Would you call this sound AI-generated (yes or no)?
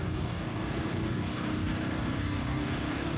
yes